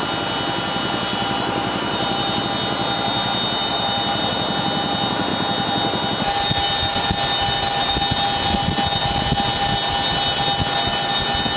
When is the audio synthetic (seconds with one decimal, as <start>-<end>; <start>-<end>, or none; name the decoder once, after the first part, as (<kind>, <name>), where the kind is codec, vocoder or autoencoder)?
1.1-2.4 (vocoder, BigVGAN v2); 3.7-4.3

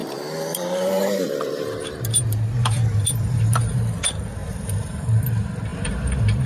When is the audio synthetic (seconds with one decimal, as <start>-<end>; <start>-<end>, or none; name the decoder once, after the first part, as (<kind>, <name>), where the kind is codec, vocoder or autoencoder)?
0.0-3.9 (vocoder, BigVGAN v2); 4.4-5.2; 5.7-6.5

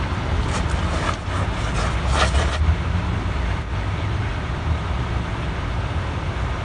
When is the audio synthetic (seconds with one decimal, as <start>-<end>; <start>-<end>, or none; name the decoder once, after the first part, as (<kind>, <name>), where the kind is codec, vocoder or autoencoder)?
2.0-2.5 (vocoder, BigVGAN v2); 4.3-5.3

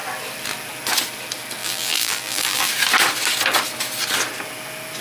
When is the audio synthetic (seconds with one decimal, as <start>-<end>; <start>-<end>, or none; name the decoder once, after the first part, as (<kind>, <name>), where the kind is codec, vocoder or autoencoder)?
1.6-2.7 (vocoder, BigVGAN v2)